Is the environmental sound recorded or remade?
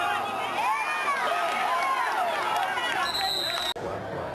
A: recorded